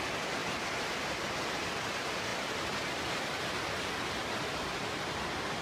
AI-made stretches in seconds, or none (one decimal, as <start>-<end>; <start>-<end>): none